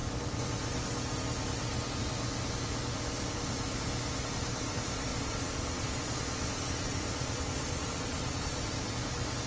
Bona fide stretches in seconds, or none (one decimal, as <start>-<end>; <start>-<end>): 0.0-5.1; 8.9-9.5